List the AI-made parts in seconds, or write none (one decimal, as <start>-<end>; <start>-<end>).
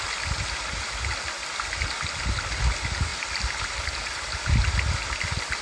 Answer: none